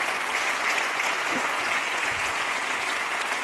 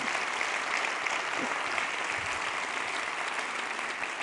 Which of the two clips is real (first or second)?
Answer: second